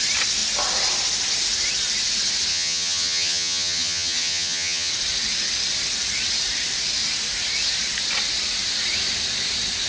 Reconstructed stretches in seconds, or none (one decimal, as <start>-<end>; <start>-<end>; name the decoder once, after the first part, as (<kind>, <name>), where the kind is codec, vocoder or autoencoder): 2.5-4.9 (vocoder, HiFi-GAN)

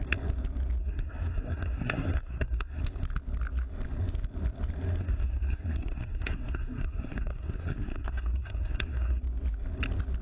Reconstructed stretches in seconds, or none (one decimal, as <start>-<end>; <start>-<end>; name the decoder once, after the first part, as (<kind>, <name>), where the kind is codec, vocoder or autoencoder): 0.8-2.8 (codec, SNAC); 5.0-9.2